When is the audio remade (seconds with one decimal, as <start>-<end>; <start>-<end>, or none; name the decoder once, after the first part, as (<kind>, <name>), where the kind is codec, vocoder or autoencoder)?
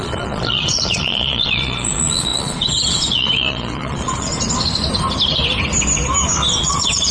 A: 0.0-4.3 (vocoder, Vocos); 6.6-7.1